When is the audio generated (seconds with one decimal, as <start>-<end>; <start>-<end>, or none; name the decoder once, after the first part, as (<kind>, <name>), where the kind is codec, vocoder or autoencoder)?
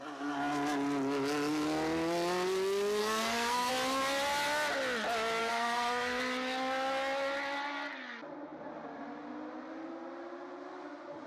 3.0-3.7 (codec, SNAC); 5.4-6.2